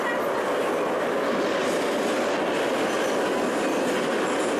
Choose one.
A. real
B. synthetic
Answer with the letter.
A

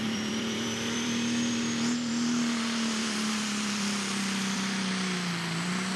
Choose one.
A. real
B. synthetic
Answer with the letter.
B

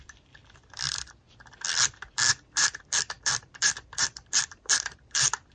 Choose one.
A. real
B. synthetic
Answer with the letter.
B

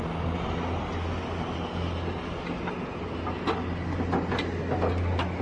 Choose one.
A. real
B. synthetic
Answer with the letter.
A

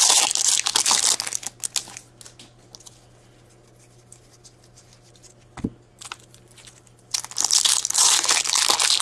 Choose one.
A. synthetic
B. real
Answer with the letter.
B